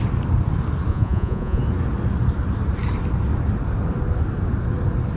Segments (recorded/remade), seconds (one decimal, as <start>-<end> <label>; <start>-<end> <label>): 0.0-0.9 recorded; 0.9-1.6 remade; 1.6-5.2 recorded